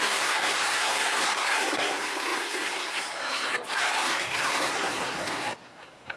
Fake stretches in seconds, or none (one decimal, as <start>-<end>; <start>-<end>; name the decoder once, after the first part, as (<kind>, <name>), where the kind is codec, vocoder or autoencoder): 0.0-6.2 (codec, SNAC)